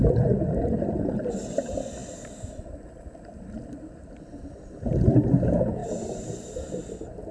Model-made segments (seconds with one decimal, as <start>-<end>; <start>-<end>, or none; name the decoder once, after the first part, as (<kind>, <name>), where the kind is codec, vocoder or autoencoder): none